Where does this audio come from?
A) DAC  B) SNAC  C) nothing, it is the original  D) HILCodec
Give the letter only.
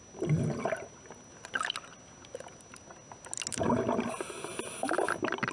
C